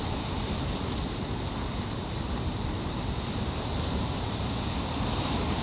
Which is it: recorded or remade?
recorded